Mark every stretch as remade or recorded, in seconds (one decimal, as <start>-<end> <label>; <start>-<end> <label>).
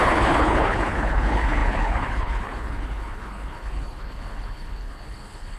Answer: 0.0-5.6 remade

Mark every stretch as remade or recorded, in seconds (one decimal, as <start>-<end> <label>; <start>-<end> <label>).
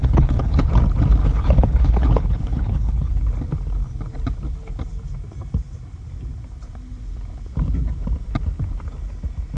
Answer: 0.0-0.7 remade; 0.7-1.2 recorded; 1.2-3.1 remade; 3.1-9.6 recorded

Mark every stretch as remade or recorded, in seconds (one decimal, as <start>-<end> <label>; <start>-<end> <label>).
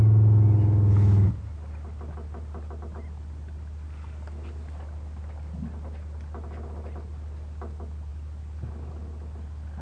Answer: 0.0-9.8 recorded